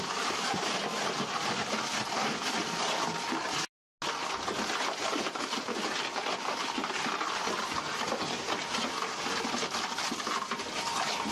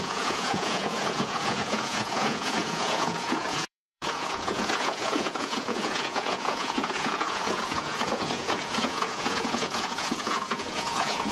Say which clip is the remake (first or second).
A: second